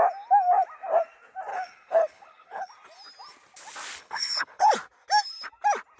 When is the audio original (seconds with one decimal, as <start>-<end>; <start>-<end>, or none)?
0.0-1.5; 2.7-4.0; 4.7-6.0